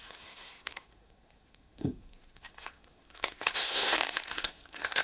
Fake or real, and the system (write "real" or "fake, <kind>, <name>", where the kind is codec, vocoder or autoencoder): fake, codec, SNAC